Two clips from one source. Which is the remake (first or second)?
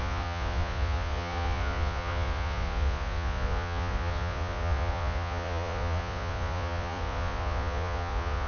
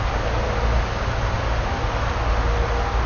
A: first